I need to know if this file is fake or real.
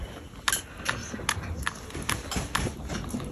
real